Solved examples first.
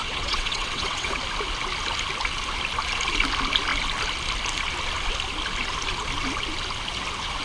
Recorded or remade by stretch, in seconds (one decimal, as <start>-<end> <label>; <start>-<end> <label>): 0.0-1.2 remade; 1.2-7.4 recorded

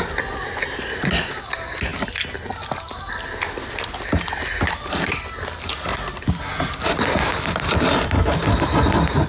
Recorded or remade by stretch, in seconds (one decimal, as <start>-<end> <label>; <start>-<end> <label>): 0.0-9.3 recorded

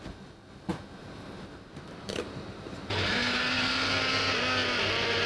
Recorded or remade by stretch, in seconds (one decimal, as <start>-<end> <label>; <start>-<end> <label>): 0.0-0.7 recorded; 0.7-3.9 remade; 3.9-5.3 recorded